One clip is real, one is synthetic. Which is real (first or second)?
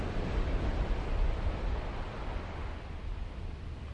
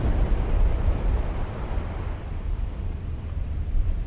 first